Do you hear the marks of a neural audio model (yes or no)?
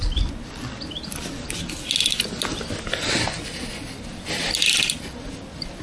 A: no